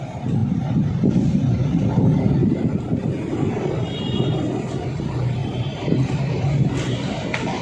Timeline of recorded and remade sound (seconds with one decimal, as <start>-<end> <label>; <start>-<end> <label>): 0.0-0.4 recorded; 0.4-5.0 remade; 5.0-5.4 recorded; 5.4-6.4 remade; 6.4-7.6 recorded

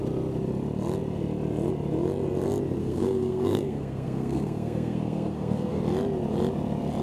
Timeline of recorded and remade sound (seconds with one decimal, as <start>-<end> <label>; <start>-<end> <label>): 0.0-2.8 recorded; 2.8-5.8 remade; 5.8-7.0 recorded

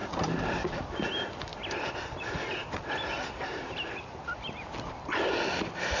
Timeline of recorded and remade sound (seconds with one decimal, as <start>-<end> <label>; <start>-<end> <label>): 0.0-0.8 remade; 0.8-1.5 recorded; 1.5-3.9 remade; 3.9-6.0 recorded

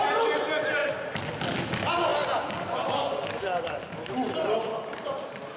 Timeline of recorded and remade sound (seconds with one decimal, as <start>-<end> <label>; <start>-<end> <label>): 0.0-5.6 recorded

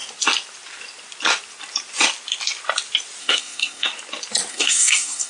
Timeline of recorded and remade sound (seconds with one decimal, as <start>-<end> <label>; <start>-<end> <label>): 0.0-3.2 recorded; 3.2-3.9 remade; 3.9-4.5 recorded; 4.5-5.3 remade